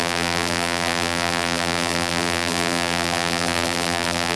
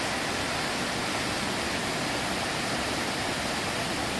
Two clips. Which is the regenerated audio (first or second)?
first